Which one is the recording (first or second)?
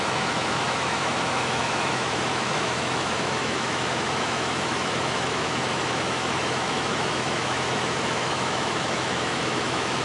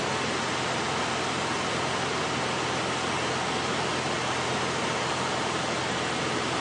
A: second